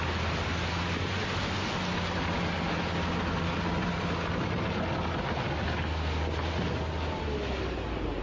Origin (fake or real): real